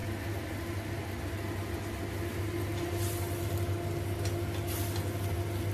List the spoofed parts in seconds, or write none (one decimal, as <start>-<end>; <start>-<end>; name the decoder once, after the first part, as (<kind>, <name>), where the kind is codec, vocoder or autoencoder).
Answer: none